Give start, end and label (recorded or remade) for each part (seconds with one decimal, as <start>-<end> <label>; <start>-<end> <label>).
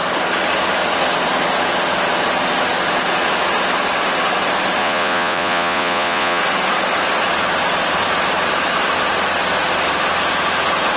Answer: 0.0-4.8 recorded; 4.8-6.4 remade; 6.4-11.0 recorded